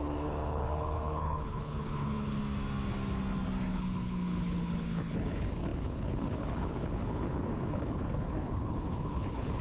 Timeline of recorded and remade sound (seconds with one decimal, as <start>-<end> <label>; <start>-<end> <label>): 0.0-2.4 remade; 2.4-3.7 recorded; 3.7-9.6 remade